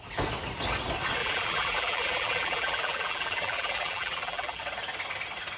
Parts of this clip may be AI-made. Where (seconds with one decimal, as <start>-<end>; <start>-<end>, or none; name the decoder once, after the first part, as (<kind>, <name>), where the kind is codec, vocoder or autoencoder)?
1.2-4.6 (vocoder, BigVGAN v2)